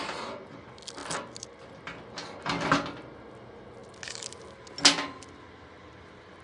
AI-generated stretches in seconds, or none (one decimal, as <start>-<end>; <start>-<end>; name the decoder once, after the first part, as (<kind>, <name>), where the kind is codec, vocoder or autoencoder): none